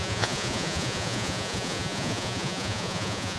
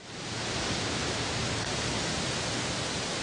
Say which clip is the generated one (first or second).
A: first